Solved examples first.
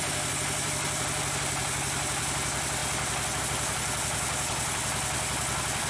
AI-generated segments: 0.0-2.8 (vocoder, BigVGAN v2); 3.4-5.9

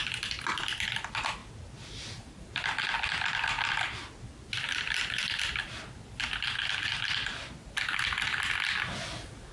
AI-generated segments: none

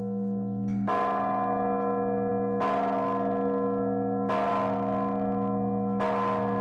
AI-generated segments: none

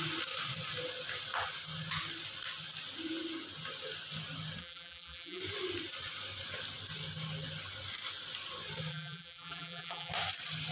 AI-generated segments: 4.6-5.4 (vocoder, BigVGAN v2); 8.9-10.1

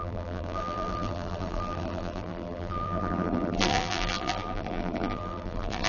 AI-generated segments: 0.0-5.9 (vocoder, BigVGAN v2)

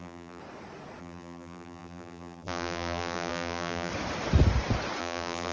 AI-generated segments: 0.0-0.4 (vocoder, BigVGAN v2); 1.0-3.9; 5.0-5.5

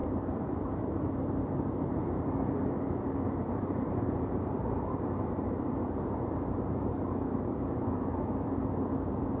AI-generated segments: 0.0-0.7 (vocoder, BigVGAN v2); 3.6-6.9